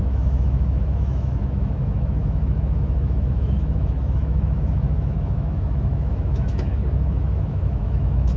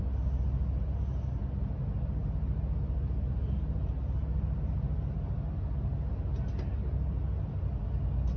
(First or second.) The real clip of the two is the second